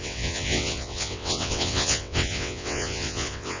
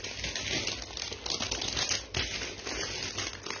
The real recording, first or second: second